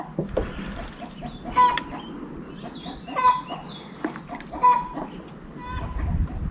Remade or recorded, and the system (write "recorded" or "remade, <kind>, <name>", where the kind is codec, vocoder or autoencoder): recorded